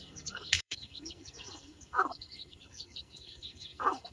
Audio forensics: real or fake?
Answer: fake